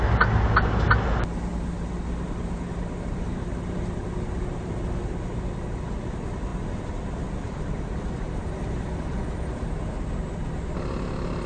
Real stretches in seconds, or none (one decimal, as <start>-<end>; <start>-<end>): 0.0-1.5; 4.4-11.5